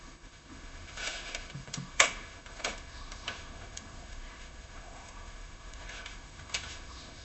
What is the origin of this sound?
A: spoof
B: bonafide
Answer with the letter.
A